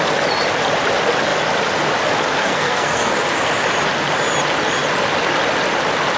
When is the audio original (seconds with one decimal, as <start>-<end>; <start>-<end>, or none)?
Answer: 0.0-2.4; 3.5-6.2